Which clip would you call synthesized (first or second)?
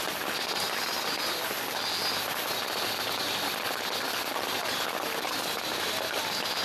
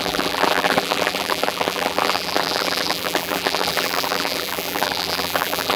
second